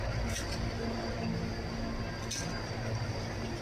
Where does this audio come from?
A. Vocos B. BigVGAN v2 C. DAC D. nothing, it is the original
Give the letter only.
D